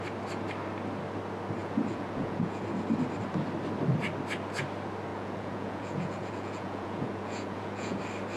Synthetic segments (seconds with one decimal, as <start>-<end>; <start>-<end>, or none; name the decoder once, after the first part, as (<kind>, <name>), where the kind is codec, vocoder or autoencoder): 1.6-2.6 (vocoder, Vocos); 5.1-8.0